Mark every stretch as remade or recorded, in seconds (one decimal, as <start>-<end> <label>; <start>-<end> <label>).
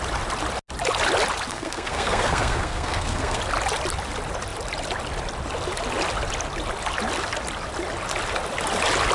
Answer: 0.0-1.5 recorded; 1.5-3.4 remade; 3.4-9.1 recorded